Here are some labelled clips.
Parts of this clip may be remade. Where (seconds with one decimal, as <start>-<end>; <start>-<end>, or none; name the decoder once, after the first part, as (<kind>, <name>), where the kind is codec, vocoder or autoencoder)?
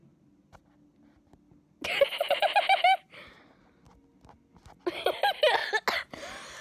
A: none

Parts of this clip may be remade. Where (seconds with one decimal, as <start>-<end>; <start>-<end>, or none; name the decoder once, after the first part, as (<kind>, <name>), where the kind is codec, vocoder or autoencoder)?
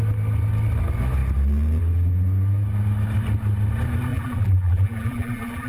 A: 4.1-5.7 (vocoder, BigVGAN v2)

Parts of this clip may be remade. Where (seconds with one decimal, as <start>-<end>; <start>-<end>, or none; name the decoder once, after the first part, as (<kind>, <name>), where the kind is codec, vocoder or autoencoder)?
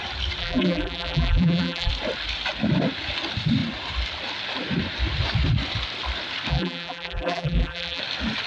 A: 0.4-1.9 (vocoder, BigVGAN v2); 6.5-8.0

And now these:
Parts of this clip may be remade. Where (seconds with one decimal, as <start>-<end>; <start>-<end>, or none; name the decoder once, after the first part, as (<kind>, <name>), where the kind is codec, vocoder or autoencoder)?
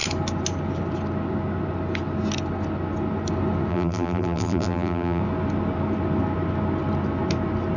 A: 3.7-5.2 (vocoder, BigVGAN v2)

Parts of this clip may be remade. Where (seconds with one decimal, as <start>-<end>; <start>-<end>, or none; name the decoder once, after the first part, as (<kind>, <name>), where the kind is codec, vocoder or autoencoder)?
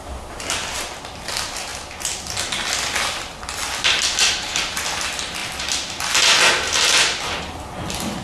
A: none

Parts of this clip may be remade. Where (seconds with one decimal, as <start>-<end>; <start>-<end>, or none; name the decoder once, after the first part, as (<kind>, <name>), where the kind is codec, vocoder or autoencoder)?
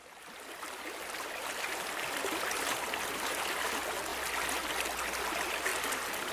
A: 0.0-3.5 (vocoder, BigVGAN v2)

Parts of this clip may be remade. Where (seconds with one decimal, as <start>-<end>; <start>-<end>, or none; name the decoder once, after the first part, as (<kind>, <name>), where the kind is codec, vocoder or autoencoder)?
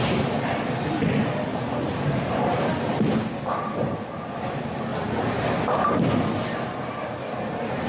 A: 1.5-2.6 (vocoder, BigVGAN v2); 4.9-5.9; 7.1-7.9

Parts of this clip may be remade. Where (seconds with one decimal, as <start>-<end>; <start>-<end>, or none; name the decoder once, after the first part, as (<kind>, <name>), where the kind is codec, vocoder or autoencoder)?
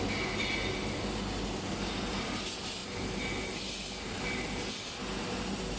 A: none